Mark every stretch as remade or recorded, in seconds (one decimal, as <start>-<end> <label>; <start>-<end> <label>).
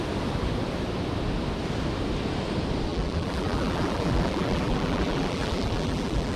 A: 0.0-2.9 recorded; 2.9-6.4 remade